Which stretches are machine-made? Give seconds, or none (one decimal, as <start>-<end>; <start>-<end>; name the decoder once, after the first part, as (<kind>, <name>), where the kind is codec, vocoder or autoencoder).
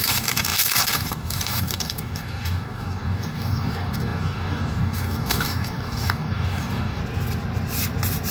0.0-7.0 (codec, DAC)